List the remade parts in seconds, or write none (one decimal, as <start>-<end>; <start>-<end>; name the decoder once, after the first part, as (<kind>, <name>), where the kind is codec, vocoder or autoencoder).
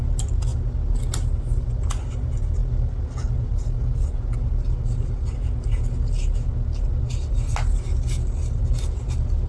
none